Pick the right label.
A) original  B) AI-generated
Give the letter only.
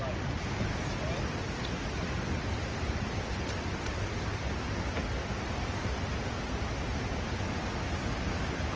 A